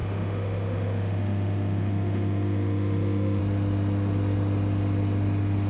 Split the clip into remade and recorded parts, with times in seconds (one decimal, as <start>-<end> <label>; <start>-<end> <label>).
0.0-3.4 remade; 3.4-5.7 recorded